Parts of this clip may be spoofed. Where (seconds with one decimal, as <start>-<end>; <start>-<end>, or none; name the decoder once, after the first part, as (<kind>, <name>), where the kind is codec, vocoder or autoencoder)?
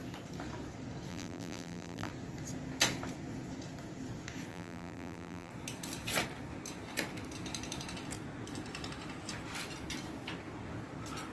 1.1-2.1 (vocoder, BigVGAN v2); 4.5-5.5